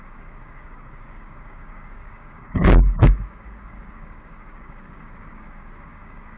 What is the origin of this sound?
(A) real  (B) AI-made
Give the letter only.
B